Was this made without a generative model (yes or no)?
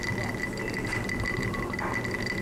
yes